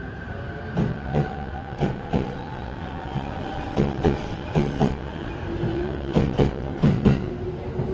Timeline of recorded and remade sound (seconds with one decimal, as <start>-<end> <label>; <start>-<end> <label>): 0.0-0.9 recorded; 0.9-5.3 remade; 5.3-5.7 recorded; 5.7-7.3 remade; 7.3-7.9 recorded